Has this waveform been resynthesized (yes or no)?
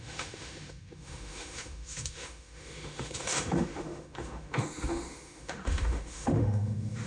yes